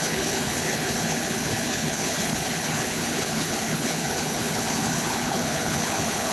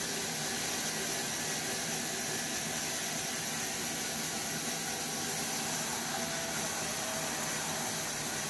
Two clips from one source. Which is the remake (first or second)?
first